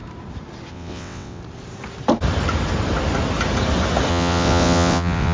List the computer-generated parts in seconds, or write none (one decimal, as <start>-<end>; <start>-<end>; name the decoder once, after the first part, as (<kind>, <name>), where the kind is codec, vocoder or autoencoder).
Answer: 0.7-1.4 (vocoder, WaveNeXt); 4.1-5.3